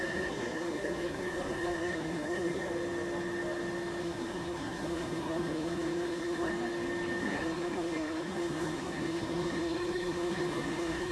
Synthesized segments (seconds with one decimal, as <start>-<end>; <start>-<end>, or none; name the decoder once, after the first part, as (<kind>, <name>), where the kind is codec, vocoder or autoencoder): 0.0-2.7 (codec, SNAC); 4.0-6.5; 7.2-11.1